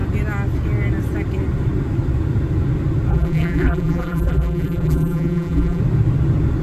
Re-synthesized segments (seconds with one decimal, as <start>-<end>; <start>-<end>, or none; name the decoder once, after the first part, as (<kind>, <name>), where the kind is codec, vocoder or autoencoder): 3.1-5.8 (vocoder, BigVGAN v2)